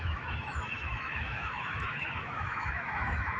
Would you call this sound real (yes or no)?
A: no